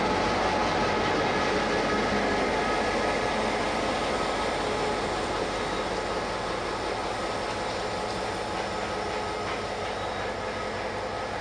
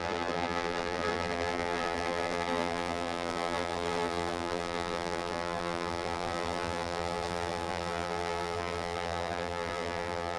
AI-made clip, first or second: second